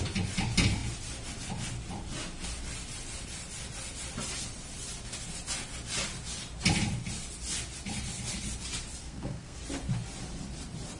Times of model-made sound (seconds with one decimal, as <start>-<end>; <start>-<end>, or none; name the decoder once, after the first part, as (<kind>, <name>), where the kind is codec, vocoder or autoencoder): 9.0-9.6 (codec, SNAC)